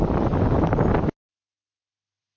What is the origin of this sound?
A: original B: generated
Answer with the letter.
A